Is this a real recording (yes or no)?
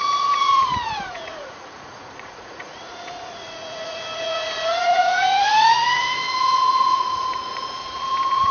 no